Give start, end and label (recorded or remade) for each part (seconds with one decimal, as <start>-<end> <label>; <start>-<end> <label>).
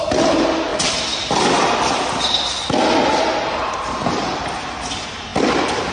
0.0-5.3 recorded; 5.3-5.9 remade